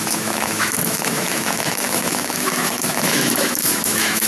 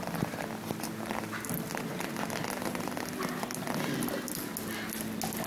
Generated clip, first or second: first